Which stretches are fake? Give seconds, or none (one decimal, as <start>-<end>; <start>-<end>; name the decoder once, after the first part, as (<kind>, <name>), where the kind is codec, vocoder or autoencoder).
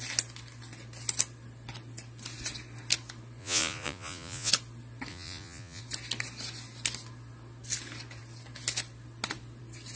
3.4-4.5 (vocoder, Vocos); 5.1-5.8